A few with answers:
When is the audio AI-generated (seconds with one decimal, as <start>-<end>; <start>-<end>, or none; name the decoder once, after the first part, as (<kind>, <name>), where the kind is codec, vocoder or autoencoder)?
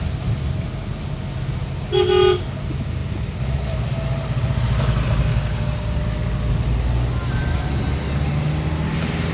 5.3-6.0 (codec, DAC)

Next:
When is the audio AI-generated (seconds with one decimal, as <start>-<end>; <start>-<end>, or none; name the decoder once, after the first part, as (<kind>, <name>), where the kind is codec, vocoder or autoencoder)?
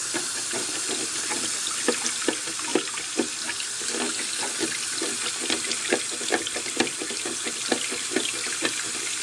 none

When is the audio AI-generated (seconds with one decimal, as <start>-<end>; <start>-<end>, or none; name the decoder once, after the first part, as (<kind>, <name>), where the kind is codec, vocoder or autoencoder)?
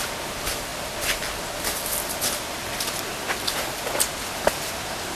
none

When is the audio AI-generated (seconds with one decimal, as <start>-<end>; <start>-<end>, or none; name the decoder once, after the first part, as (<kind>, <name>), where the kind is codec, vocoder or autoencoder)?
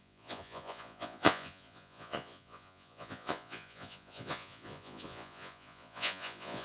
0.0-6.6 (vocoder, Vocos)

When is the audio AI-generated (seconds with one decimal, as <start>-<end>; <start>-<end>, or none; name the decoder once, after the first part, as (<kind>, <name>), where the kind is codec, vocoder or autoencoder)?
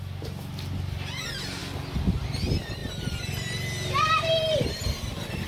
none